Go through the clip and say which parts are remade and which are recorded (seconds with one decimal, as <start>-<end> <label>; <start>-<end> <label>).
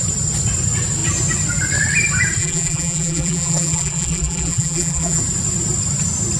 0.0-2.4 recorded; 2.4-5.2 remade; 5.2-6.4 recorded